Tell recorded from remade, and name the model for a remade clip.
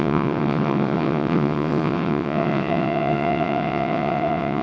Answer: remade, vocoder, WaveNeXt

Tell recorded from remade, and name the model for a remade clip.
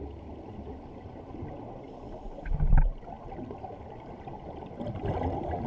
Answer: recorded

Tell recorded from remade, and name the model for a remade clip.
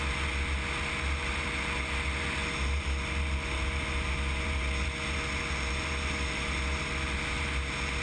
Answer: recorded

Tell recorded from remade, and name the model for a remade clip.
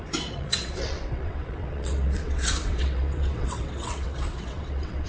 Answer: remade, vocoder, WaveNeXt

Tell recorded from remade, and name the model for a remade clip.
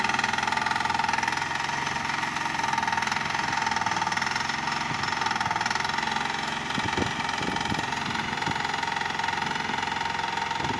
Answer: recorded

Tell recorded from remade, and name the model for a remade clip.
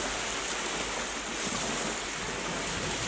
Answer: recorded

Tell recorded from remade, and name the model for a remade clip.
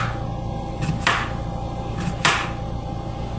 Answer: recorded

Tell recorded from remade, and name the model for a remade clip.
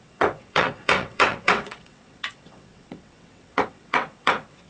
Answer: remade, vocoder, WaveNeXt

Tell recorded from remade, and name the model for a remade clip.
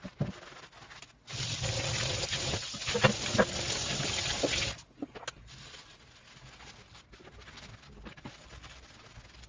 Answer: recorded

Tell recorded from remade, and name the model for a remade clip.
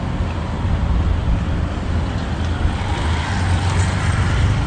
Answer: recorded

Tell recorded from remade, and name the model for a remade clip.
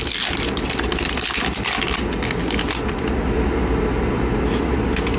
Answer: recorded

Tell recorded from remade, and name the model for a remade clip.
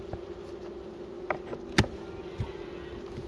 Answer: recorded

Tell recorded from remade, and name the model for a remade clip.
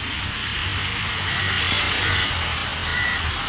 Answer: recorded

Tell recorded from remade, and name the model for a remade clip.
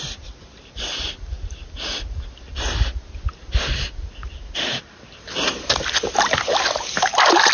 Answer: recorded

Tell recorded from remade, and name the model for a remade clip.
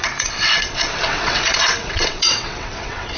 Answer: remade, vocoder, WaveNeXt